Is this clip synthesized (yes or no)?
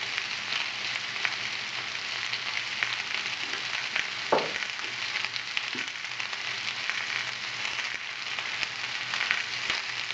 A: no